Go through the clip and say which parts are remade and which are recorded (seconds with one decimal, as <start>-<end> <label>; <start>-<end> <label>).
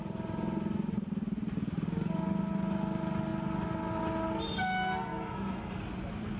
0.0-5.1 recorded; 5.1-5.8 remade; 5.8-6.4 recorded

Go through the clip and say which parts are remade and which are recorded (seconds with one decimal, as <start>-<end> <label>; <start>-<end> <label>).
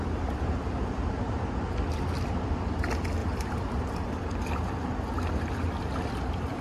0.0-3.2 recorded; 3.2-4.9 remade; 4.9-6.6 recorded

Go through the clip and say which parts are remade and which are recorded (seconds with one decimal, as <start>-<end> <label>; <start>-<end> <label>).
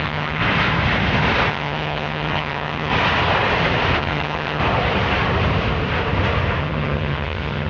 0.0-0.4 remade; 0.4-1.5 recorded; 1.5-2.9 remade; 2.9-4.0 recorded; 4.0-4.6 remade; 4.6-6.6 recorded; 6.6-7.7 remade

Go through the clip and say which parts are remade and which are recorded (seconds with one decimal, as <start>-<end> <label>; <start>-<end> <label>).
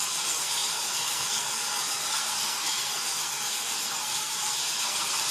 0.0-5.3 remade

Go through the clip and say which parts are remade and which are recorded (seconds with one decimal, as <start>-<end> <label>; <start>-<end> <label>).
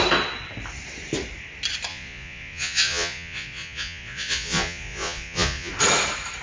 0.0-1.9 recorded; 1.9-5.7 remade; 5.7-6.4 recorded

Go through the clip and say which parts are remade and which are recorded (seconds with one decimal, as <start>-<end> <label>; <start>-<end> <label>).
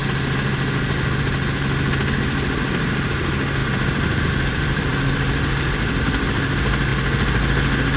0.0-3.6 recorded; 3.6-6.0 remade; 6.0-8.0 recorded